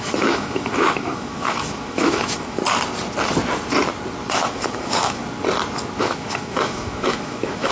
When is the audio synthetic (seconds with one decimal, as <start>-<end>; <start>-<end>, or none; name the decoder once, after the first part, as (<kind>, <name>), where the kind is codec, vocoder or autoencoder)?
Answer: 0.0-2.6 (autoencoder, DAC-VAE); 4.3-5.2; 6.0-7.7